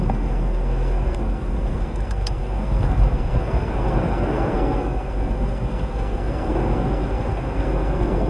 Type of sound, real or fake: fake